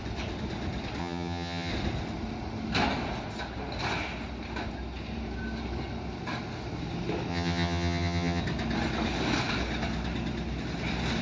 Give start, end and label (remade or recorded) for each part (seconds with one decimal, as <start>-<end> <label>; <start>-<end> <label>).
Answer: 0.0-1.0 recorded; 1.0-1.7 remade; 1.7-7.3 recorded; 7.3-8.4 remade; 8.4-11.2 recorded

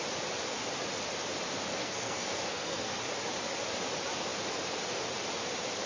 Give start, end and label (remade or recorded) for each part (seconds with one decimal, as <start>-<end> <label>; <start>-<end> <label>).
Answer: 0.0-1.8 recorded; 1.8-3.0 remade; 3.0-5.9 recorded

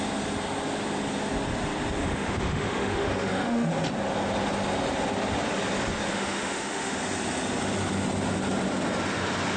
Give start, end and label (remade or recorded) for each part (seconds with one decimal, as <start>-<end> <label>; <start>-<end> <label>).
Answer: 0.0-2.0 recorded; 2.0-3.7 remade; 3.7-6.1 recorded; 6.1-7.0 remade; 7.0-9.6 recorded

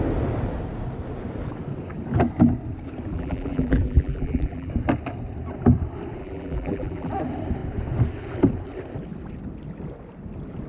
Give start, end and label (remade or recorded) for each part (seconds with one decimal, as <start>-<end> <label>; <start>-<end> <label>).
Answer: 0.0-3.1 recorded; 3.1-4.7 remade; 4.7-6.2 recorded; 6.2-7.1 remade; 7.1-10.7 recorded

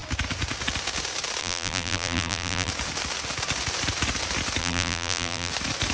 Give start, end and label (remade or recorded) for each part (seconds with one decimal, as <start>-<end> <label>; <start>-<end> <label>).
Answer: 0.0-1.4 recorded; 1.4-2.7 remade; 2.7-4.6 recorded; 4.6-5.5 remade; 5.5-5.9 recorded

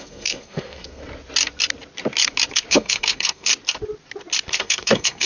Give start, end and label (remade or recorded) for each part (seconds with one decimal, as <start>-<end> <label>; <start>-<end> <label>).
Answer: 0.0-1.0 remade; 1.0-2.7 recorded; 2.7-3.5 remade; 3.5-4.5 recorded; 4.5-5.3 remade

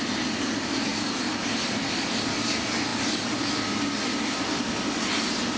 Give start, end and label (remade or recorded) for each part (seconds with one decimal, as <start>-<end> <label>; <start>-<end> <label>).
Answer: 0.0-0.9 recorded; 0.9-1.6 remade; 1.6-5.6 recorded